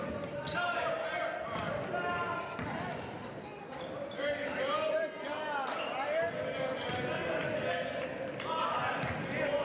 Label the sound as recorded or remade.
recorded